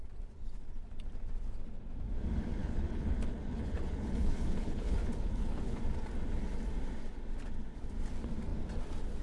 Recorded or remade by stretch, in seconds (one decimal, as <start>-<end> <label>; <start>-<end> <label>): 0.0-2.6 recorded; 2.6-5.8 remade; 5.8-9.2 recorded